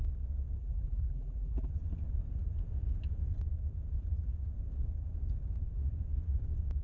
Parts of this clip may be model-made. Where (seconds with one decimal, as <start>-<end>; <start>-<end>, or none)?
0.6-1.7